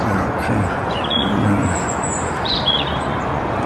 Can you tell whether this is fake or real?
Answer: fake